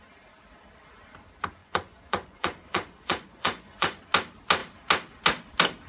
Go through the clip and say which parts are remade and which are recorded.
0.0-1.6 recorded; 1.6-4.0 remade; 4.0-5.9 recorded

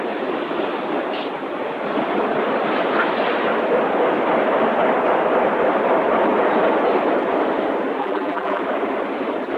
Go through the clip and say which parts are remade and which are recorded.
0.0-8.0 recorded; 8.0-8.6 remade; 8.6-9.6 recorded

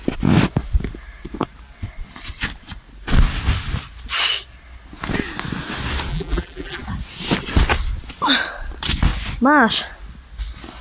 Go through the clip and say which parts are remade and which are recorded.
0.0-6.1 recorded; 6.1-6.8 remade; 6.8-10.8 recorded

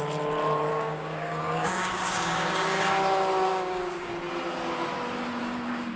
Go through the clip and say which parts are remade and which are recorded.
0.0-0.7 recorded; 0.7-2.8 remade; 2.8-3.5 recorded; 3.5-4.1 remade; 4.1-5.4 recorded; 5.4-6.0 remade

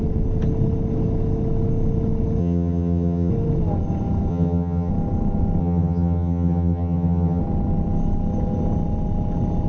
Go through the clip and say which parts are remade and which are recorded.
0.0-2.4 recorded; 2.4-3.3 remade; 3.3-4.3 recorded; 4.3-4.9 remade; 4.9-5.6 recorded; 5.6-7.4 remade; 7.4-9.7 recorded

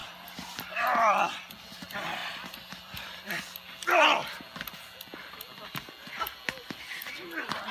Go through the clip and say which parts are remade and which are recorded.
0.0-1.2 remade; 1.2-2.2 recorded; 2.2-3.4 remade; 3.4-7.7 recorded